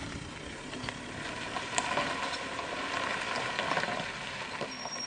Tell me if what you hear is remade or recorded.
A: recorded